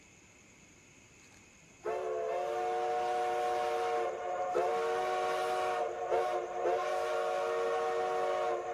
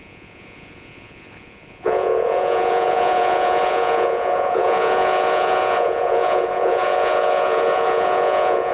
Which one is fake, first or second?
second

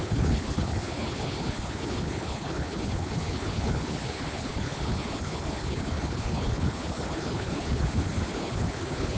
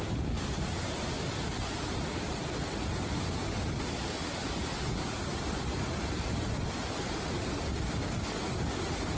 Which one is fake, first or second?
first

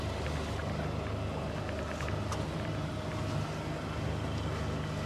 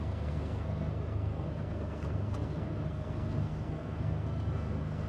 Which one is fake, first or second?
second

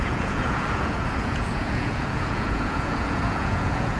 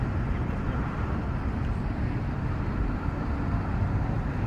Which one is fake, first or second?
first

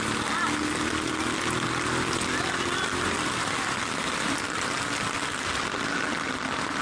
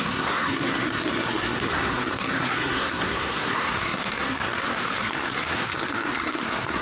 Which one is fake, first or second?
second